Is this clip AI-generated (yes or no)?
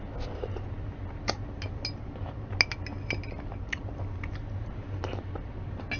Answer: no